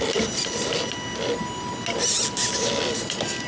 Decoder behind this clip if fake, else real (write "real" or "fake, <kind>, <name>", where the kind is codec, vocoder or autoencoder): real